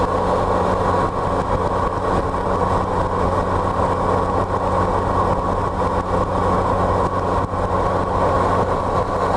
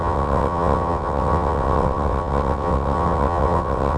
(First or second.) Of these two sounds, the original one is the first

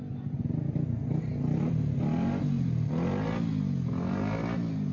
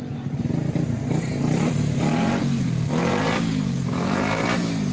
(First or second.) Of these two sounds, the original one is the first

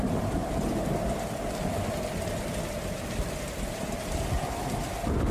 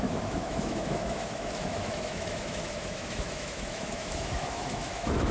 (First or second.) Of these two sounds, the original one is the first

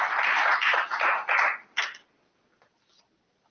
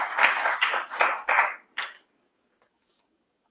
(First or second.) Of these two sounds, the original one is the first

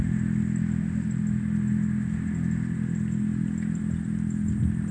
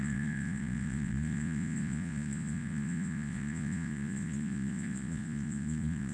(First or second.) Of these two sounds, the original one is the first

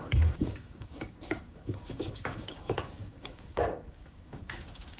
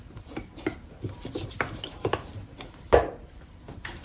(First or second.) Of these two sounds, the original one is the second